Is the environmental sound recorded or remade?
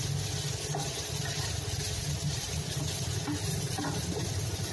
recorded